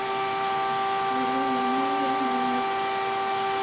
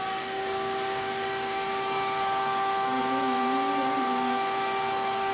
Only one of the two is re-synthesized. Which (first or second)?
second